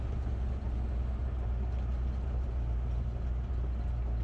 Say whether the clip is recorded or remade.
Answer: recorded